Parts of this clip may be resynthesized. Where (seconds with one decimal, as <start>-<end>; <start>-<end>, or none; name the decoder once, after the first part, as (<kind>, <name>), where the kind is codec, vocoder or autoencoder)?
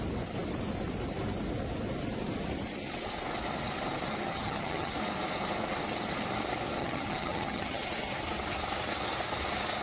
4.2-4.9 (vocoder, HiFi-GAN); 6.8-7.8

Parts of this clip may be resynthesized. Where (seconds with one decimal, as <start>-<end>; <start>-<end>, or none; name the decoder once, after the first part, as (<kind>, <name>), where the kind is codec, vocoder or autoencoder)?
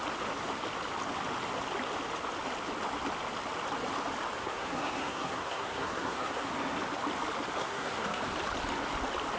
4.4-6.5 (codec, SNAC); 7.6-8.2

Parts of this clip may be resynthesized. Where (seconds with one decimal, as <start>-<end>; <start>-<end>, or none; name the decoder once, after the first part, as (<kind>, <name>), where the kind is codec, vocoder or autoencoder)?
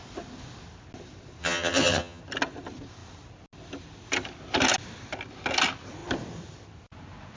1.4-2.2 (vocoder, HiFi-GAN)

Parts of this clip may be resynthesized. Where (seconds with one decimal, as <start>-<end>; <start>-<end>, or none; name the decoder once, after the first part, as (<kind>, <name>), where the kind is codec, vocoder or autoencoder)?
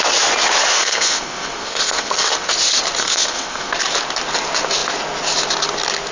0.7-2.5 (codec, SNAC); 3.0-3.7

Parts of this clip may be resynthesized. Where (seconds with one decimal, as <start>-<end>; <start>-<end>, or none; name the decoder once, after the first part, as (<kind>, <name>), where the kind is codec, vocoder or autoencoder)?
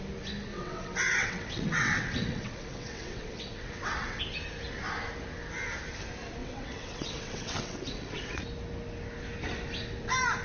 0.5-4.2 (vocoder, WaveNeXt); 6.4-8.4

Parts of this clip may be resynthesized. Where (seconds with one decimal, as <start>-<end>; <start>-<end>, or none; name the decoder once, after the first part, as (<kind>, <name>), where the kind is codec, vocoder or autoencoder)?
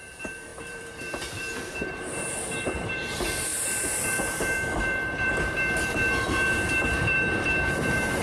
0.0-8.2 (vocoder, BigVGAN v2)